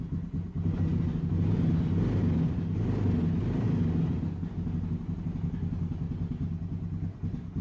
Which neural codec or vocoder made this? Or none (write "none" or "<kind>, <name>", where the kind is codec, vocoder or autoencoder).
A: none